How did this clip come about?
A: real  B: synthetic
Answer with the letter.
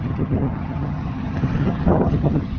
B